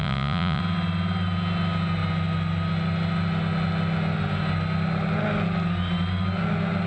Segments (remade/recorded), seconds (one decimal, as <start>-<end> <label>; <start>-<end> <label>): 0.0-0.6 remade; 0.6-6.9 recorded